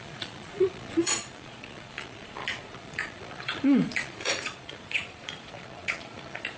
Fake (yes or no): yes